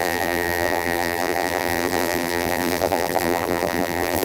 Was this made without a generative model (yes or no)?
no